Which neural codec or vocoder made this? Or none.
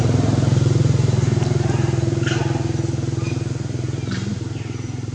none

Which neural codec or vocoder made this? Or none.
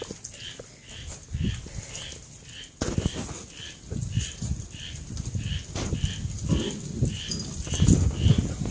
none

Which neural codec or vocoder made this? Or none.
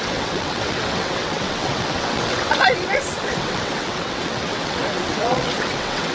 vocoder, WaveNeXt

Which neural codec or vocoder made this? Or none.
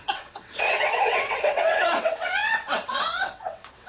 vocoder, WaveNeXt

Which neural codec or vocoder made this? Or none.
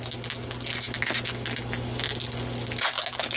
none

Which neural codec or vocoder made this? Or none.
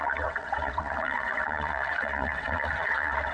vocoder, WaveNeXt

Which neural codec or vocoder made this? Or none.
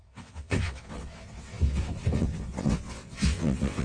vocoder, WaveNeXt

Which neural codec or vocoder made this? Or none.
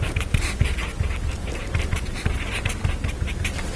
none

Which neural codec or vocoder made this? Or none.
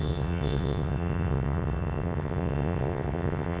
vocoder, WaveNeXt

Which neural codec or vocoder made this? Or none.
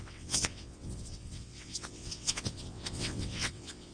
vocoder, WaveNeXt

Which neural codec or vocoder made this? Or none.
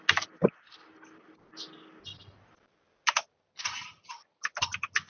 none